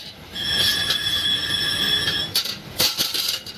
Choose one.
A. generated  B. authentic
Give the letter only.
A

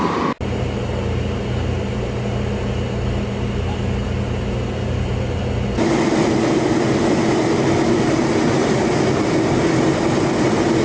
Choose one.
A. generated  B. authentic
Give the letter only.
B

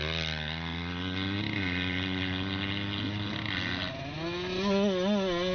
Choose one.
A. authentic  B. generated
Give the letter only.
A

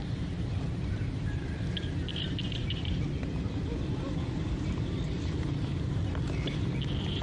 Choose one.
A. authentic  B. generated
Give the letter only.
B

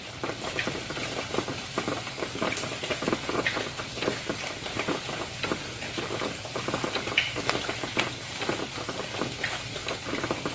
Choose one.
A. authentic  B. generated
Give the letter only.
A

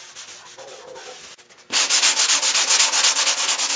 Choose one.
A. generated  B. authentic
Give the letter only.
B